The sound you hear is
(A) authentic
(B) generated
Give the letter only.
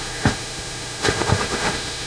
B